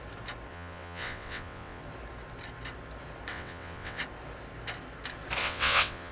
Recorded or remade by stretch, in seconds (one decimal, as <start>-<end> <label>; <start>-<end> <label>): 0.0-0.5 recorded; 0.5-1.8 remade; 1.8-3.3 recorded; 3.3-4.0 remade; 4.0-5.4 recorded; 5.4-6.1 remade